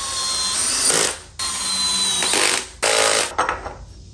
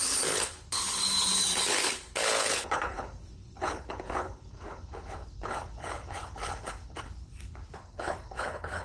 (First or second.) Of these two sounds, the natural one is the first